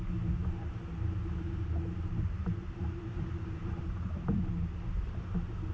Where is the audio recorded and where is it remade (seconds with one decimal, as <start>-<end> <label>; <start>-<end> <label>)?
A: 0.0-0.4 recorded; 0.4-3.8 remade; 3.8-5.7 recorded